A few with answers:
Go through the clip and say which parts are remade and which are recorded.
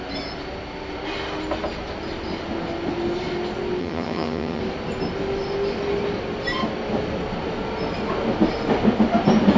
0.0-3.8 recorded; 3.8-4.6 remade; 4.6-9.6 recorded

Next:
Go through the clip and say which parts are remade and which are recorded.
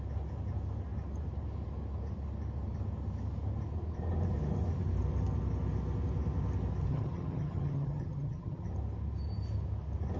0.0-6.9 recorded; 6.9-8.7 remade; 8.7-10.2 recorded